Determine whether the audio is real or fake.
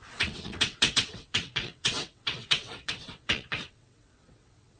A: fake